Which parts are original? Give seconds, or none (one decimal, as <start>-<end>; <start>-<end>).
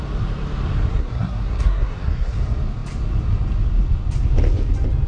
0.0-0.9; 2.4-5.1